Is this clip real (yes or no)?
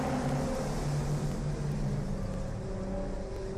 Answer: yes